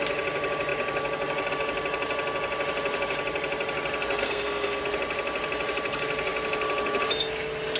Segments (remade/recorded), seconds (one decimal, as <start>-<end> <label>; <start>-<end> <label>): 0.0-4.2 recorded; 4.2-4.8 remade; 4.8-7.8 recorded

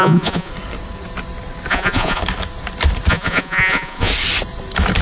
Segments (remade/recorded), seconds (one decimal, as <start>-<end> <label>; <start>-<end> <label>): 0.0-0.5 remade; 0.5-1.7 recorded; 1.7-2.2 remade; 2.2-3.1 recorded; 3.1-4.1 remade; 4.1-5.0 recorded

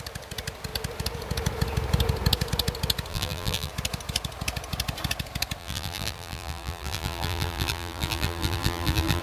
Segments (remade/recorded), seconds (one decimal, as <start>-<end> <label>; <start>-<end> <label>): 0.0-3.1 recorded; 3.1-3.7 remade; 3.7-5.6 recorded; 5.6-9.2 remade

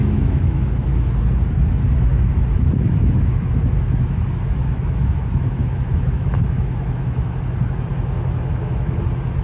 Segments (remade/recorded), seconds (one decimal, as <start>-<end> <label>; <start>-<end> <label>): 0.0-1.2 remade; 1.2-2.1 recorded; 2.1-7.3 remade; 7.3-7.9 recorded; 7.9-9.0 remade; 9.0-9.4 recorded

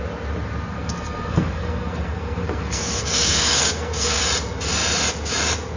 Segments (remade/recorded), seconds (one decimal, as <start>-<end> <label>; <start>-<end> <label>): 0.0-0.7 recorded; 0.7-4.2 remade; 4.2-5.8 recorded

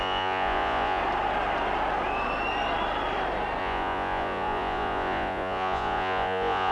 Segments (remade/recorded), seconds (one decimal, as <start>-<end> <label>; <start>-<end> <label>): 0.0-1.0 remade; 1.0-3.6 recorded; 3.6-6.7 remade